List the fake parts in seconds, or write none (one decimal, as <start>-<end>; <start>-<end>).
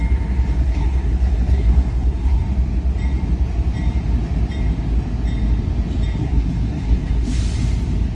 0.5-2.4; 6.2-7.4